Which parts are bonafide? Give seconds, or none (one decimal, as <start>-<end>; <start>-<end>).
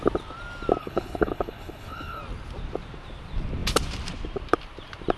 0.0-0.8; 2.2-5.2